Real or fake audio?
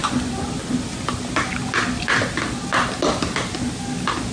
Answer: real